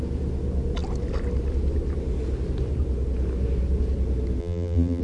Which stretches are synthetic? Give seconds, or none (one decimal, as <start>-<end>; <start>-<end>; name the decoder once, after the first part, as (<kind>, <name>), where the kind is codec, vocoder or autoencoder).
4.4-5.0 (vocoder, BigVGAN v2)